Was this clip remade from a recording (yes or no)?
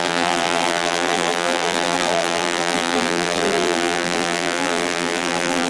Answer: yes